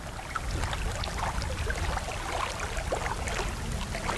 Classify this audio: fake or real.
real